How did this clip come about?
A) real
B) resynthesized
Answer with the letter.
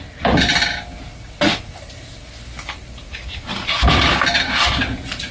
A